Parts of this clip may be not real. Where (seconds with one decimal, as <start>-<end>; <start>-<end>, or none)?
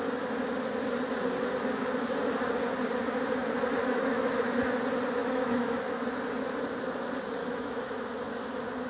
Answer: 3.8-4.4; 5.2-5.8; 7.4-8.0